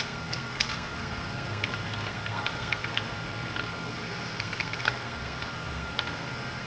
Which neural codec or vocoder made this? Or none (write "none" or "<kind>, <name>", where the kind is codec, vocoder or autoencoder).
codec, SNAC